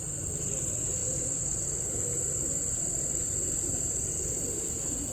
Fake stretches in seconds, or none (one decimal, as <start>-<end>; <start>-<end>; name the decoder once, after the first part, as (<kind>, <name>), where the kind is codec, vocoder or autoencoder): none